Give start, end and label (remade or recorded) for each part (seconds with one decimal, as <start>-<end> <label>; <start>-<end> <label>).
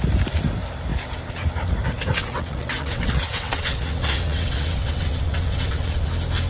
0.0-2.2 recorded; 2.2-6.1 remade; 6.1-6.5 recorded